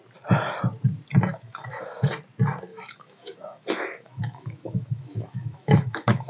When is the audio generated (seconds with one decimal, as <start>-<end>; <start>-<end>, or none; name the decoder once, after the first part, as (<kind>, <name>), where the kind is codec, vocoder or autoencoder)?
1.3-2.1 (autoencoder, DAC-VAE); 2.7-6.3